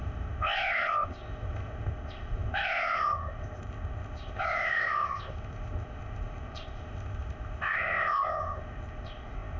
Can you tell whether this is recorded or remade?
remade